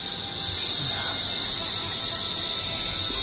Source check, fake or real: real